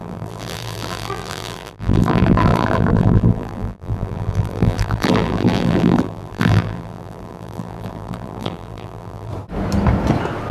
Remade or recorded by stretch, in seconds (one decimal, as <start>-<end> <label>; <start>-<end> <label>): 0.0-9.3 remade; 9.3-10.5 recorded